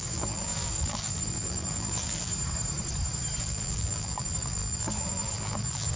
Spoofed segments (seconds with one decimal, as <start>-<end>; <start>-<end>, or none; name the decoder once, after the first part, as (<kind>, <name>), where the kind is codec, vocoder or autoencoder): 0.0-2.3 (vocoder, BigVGAN v2); 3.4-6.0